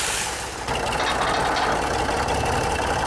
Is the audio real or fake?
real